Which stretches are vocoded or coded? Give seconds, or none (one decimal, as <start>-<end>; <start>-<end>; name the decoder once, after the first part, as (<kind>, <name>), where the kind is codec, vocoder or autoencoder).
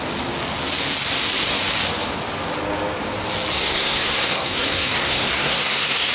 3.5-6.1 (codec, SNAC)